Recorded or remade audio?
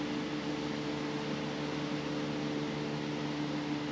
recorded